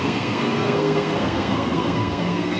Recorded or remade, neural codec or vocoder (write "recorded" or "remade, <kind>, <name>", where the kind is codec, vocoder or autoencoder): remade, codec, SNAC